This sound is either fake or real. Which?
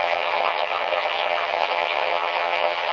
fake